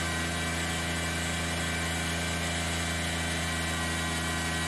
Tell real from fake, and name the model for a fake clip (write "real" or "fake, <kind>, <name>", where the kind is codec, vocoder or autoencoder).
real